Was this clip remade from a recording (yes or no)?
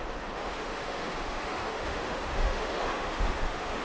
yes